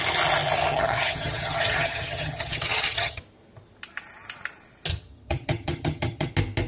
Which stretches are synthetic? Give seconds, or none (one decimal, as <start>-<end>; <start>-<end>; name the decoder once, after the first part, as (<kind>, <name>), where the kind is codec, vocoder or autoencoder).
0.7-3.2 (vocoder, HiFi-GAN); 4.9-6.3